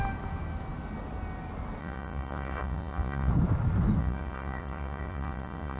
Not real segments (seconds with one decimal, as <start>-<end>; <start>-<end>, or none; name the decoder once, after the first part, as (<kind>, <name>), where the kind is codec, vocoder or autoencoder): 1.8-3.3 (vocoder, Vocos); 4.0-5.8